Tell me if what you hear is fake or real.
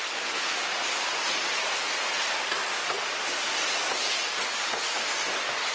real